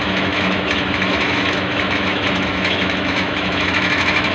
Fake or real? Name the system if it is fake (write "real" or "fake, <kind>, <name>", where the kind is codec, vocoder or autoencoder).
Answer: fake, autoencoder, DAC-VAE